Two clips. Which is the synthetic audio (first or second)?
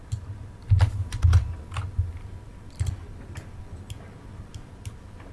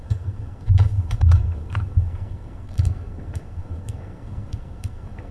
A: second